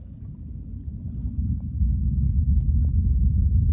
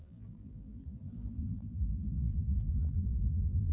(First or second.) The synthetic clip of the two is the second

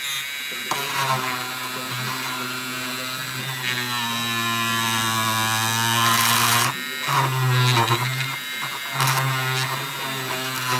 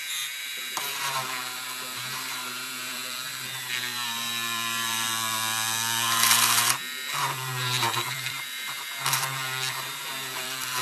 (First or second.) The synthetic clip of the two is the second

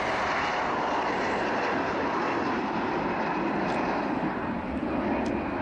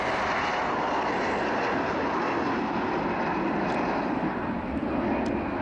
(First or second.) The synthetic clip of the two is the first